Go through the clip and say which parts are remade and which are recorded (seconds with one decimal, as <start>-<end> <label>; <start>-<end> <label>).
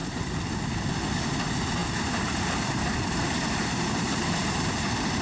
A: 0.0-1.8 recorded; 1.8-5.2 remade